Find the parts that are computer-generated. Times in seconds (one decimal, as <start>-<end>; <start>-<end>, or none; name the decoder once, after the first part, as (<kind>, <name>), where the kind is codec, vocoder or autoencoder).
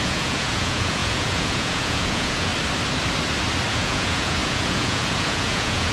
0.0-2.5 (vocoder, Vocos); 3.7-5.9